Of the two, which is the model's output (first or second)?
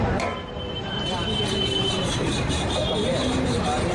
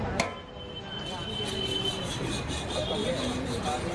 first